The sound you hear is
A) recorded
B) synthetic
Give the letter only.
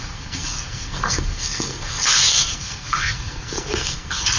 B